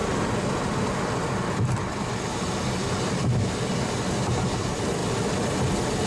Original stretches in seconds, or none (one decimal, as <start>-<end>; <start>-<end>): 0.0-3.2; 3.7-5.0; 5.5-6.1